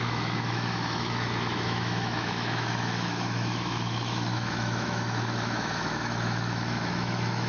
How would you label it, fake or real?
fake